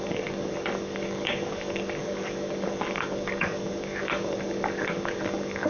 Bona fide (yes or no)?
no